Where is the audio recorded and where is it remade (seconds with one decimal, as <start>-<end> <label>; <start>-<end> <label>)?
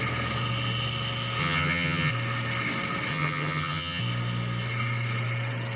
0.0-1.4 recorded; 1.4-2.1 remade; 2.1-3.1 recorded; 3.1-4.0 remade; 4.0-5.8 recorded